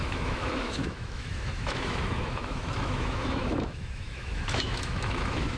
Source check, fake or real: fake